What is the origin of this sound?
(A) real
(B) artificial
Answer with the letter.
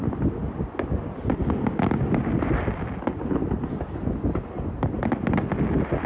A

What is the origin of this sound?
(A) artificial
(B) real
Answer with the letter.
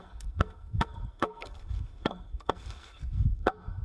A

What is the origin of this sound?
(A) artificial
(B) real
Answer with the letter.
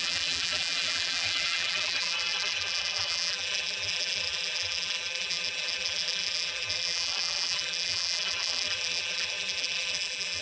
A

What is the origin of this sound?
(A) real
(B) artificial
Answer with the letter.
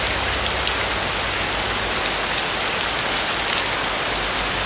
A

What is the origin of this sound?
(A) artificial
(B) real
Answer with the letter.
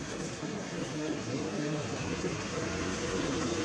A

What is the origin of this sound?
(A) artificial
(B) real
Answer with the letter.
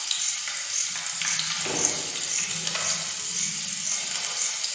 B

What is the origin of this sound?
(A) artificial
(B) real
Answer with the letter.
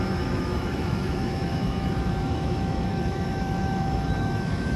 A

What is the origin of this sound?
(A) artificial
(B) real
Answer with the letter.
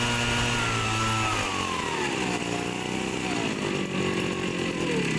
B